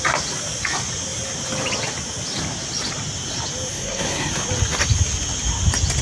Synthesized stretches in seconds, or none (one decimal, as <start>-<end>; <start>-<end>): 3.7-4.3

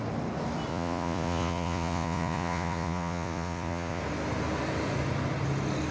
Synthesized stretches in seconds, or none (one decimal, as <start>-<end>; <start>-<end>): 0.7-4.0

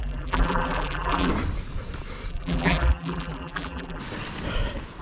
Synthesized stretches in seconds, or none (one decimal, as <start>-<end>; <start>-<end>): 0.0-1.3; 2.3-4.0

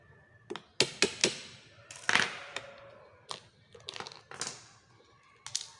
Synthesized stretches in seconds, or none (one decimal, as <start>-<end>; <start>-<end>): none

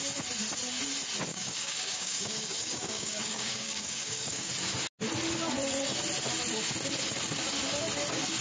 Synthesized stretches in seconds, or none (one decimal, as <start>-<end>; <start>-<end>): 1.3-4.5

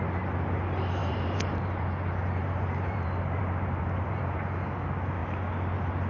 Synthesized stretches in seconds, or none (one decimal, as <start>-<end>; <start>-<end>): 1.0-1.9; 2.4-4.2

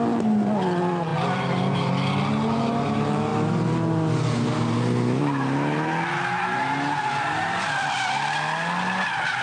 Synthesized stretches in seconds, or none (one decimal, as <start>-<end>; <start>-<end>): none

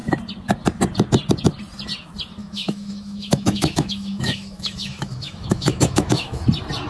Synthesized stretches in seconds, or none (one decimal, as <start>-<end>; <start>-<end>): 2.4-6.4